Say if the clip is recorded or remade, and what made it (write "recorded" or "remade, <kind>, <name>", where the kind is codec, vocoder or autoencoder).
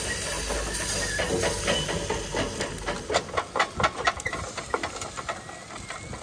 recorded